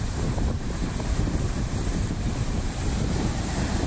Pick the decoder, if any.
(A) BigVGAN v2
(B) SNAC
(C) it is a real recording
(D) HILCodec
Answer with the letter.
A